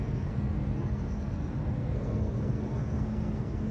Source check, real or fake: fake